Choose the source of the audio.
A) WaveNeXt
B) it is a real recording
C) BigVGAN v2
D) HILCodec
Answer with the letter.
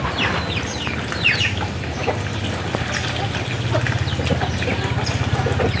B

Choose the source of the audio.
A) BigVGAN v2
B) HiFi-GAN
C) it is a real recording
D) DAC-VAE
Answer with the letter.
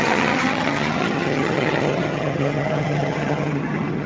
B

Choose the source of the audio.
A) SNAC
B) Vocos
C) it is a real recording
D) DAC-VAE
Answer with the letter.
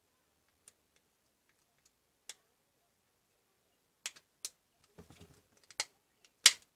C